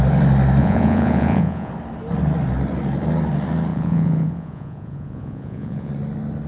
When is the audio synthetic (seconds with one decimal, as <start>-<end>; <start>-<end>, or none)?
0.6-1.7; 3.7-5.9